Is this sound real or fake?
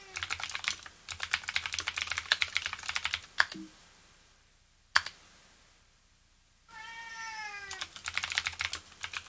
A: real